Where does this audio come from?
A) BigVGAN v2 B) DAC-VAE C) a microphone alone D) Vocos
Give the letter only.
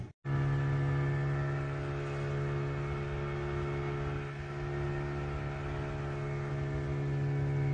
C